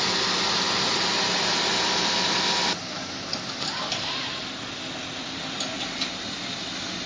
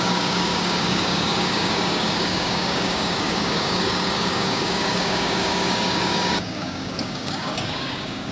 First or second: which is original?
first